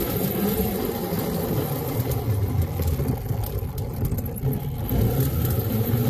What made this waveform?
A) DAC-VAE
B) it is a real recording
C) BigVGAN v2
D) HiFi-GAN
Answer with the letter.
B